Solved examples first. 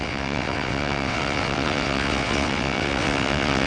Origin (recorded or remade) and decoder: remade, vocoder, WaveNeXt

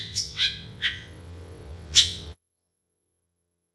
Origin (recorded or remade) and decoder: remade, vocoder, WaveNeXt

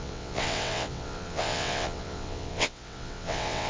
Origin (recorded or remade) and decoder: remade, vocoder, WaveNeXt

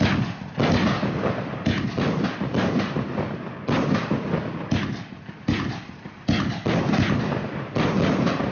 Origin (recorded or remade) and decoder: recorded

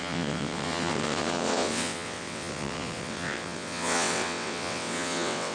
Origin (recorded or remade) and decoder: remade, vocoder, WaveNeXt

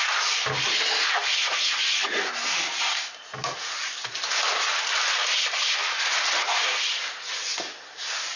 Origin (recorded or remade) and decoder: recorded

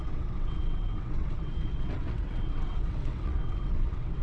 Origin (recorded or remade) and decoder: remade, vocoder, WaveNeXt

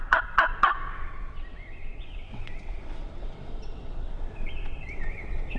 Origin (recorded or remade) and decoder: remade, vocoder, WaveNeXt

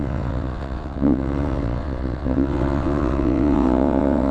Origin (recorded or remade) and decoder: remade, vocoder, WaveNeXt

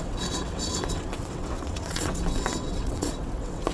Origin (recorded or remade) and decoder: remade, vocoder, WaveNeXt